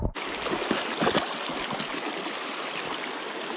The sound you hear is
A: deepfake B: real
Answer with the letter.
B